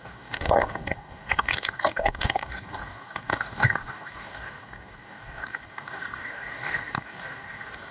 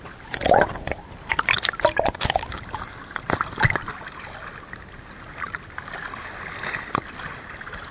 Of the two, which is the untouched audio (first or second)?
second